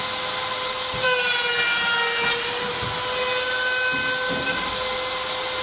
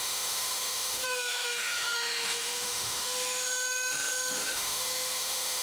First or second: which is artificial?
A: second